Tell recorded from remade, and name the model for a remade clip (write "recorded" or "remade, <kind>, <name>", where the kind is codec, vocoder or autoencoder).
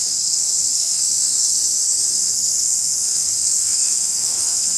remade, codec, SNAC